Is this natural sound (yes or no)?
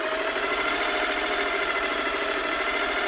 yes